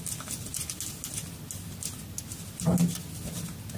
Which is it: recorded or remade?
recorded